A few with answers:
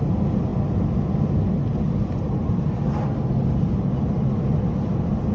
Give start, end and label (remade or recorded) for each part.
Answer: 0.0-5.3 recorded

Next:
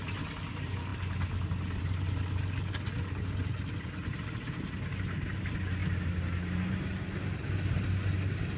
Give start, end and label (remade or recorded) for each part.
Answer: 0.0-8.6 recorded

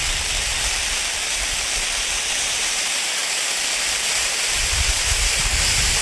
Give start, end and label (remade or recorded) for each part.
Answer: 0.0-2.3 recorded; 2.3-3.2 remade; 3.2-4.1 recorded; 4.1-6.0 remade

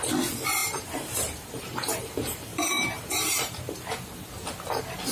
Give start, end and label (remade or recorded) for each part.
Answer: 0.0-0.6 recorded; 0.6-2.0 remade; 2.0-2.5 recorded; 2.5-3.6 remade; 3.6-5.1 recorded

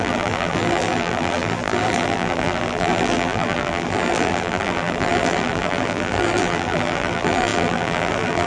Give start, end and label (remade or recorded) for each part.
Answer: 0.0-8.5 remade

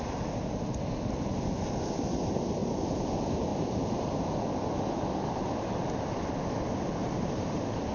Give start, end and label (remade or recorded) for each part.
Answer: 0.0-2.6 recorded; 2.6-3.1 remade; 3.1-3.5 recorded; 3.5-4.2 remade; 4.2-7.0 recorded; 7.0-7.9 remade